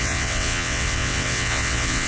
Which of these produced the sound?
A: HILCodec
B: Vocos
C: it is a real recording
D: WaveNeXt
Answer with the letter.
D